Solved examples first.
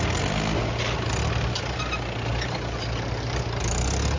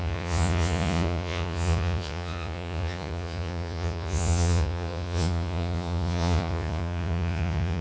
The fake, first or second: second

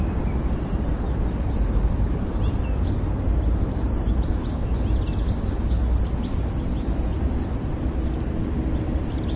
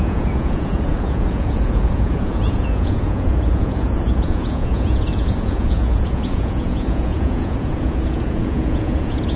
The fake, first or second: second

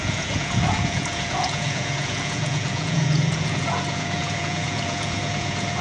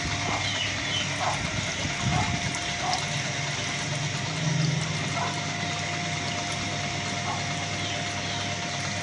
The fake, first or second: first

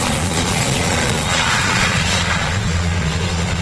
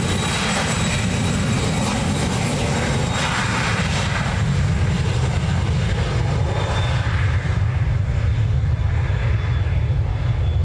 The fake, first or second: first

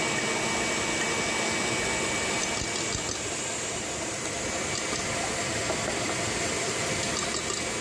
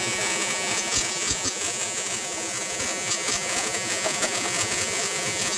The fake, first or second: second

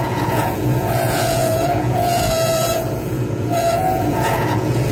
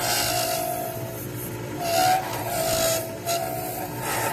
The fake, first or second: first